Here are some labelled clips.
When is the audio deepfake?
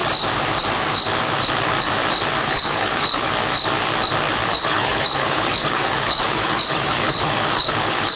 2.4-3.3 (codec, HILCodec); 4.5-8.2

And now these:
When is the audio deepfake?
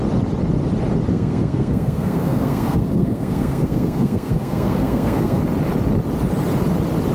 1.1-5.4 (codec, SNAC)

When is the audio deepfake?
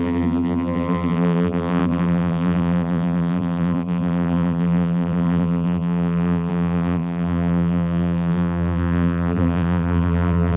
0.0-10.6 (vocoder, BigVGAN v2)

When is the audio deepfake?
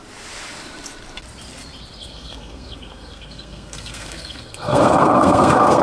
2.0-5.8 (codec, SNAC)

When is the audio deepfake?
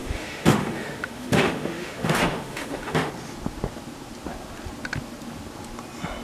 0.0-3.1 (autoencoder, DAC-VAE)